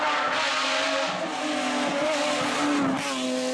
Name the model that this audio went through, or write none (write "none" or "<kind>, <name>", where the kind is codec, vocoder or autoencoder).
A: none